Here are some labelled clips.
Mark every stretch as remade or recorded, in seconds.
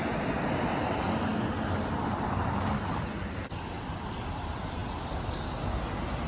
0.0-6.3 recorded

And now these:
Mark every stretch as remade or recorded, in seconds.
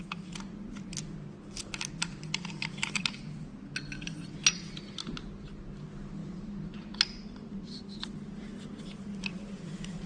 0.0-10.1 recorded